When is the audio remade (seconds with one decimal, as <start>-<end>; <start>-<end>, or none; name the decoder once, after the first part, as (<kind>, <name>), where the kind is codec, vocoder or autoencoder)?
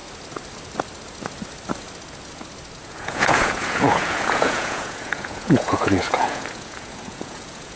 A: 2.8-7.8 (vocoder, Vocos)